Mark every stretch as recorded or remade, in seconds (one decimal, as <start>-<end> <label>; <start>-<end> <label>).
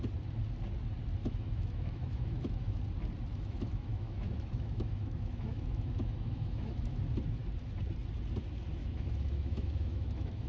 0.0-1.2 recorded; 1.2-2.8 remade; 2.8-3.3 recorded; 3.3-7.0 remade; 7.0-8.8 recorded; 8.8-10.5 remade